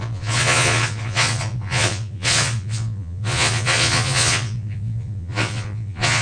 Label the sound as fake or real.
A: fake